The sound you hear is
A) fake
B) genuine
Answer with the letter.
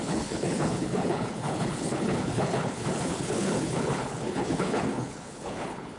A